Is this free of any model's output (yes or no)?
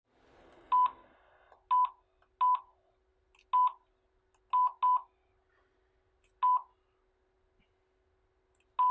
yes